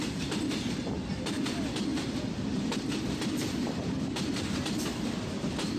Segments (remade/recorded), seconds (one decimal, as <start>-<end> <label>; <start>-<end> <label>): 0.0-5.8 recorded